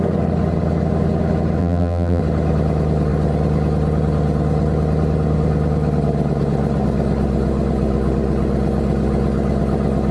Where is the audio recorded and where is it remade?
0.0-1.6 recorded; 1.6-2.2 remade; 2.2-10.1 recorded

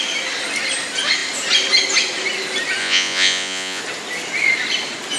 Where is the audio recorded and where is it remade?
0.0-2.8 recorded; 2.8-3.8 remade; 3.8-5.2 recorded

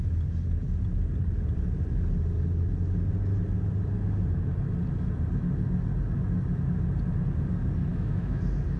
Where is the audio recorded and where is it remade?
0.0-7.9 recorded; 7.9-8.4 remade; 8.4-8.8 recorded

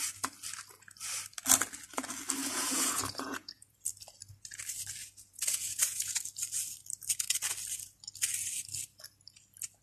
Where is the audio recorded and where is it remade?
0.0-2.4 recorded; 2.4-3.7 remade; 3.7-5.0 recorded; 5.0-6.2 remade; 6.2-9.8 recorded

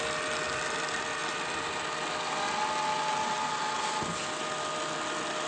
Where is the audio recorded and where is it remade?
0.0-5.5 recorded